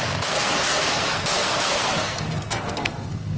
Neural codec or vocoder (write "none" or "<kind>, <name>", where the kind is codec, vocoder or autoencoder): codec, SNAC